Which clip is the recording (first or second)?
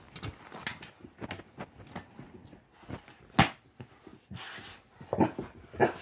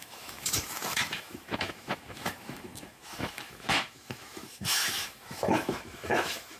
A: first